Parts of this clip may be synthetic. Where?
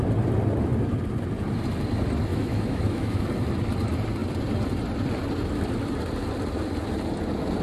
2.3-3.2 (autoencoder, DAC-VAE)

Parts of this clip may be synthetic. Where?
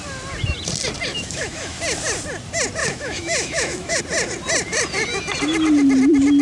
1.1-1.8 (autoencoder, DAC-VAE); 2.8-4.0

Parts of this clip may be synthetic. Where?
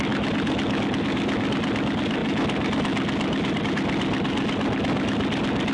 none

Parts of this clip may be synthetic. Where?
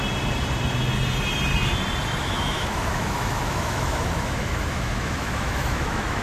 2.2-6.2 (autoencoder, DAC-VAE)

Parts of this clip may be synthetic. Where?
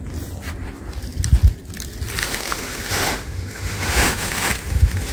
2.2-5.1 (autoencoder, DAC-VAE)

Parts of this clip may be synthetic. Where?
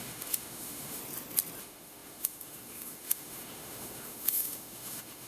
0.0-1.0 (autoencoder, DAC-VAE); 1.6-5.3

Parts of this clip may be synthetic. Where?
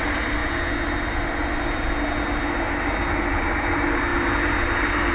none